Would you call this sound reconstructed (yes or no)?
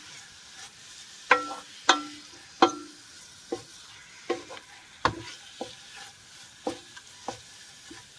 no